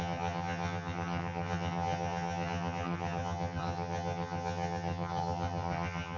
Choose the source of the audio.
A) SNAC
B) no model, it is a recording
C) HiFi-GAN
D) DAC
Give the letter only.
C